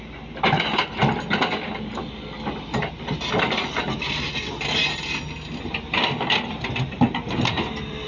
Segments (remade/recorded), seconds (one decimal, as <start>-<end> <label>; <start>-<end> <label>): 0.0-8.1 recorded